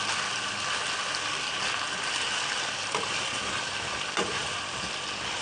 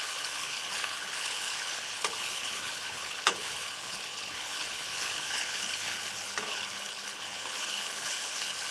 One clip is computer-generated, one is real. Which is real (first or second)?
first